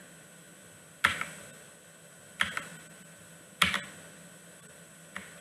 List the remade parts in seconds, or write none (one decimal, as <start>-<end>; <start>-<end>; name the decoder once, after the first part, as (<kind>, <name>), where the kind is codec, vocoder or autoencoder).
none